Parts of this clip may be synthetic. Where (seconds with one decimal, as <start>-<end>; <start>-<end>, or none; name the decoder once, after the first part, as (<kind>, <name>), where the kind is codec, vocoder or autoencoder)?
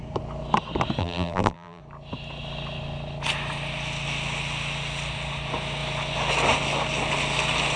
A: 1.0-1.8 (vocoder, BigVGAN v2)